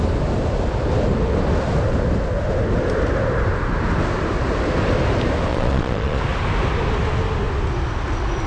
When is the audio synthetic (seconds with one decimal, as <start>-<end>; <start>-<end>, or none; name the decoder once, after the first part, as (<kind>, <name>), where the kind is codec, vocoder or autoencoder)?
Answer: 5.5-6.2 (vocoder, Vocos)